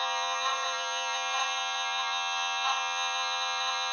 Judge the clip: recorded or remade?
remade